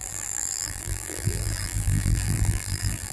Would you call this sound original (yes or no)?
no